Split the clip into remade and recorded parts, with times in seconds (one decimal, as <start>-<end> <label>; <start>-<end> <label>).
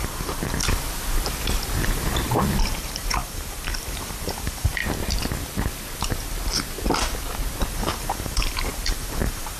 0.0-0.6 remade; 0.6-2.6 recorded; 2.6-4.8 remade; 4.8-7.7 recorded; 7.7-9.6 remade